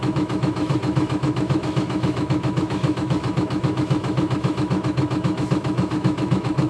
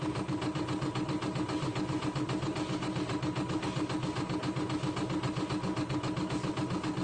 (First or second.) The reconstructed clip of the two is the first